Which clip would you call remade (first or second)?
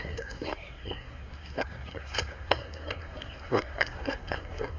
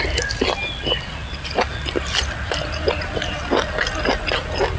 first